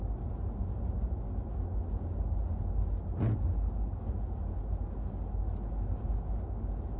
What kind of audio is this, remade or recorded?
recorded